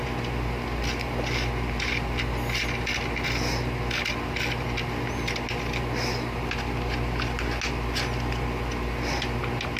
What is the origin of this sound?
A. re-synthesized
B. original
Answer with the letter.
B